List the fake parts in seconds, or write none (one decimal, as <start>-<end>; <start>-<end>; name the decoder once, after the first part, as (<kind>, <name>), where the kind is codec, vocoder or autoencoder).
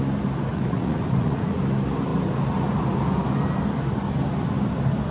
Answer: 0.5-1.6 (vocoder, Vocos)